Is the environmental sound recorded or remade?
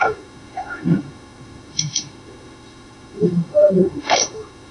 remade